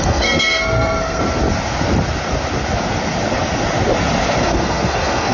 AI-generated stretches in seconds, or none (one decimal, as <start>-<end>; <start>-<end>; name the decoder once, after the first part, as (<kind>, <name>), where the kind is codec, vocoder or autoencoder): 0.0-1.2 (codec, SNAC); 4.4-5.3